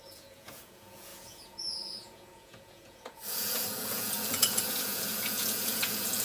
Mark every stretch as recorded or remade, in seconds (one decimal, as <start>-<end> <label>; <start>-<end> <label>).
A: 0.0-6.2 remade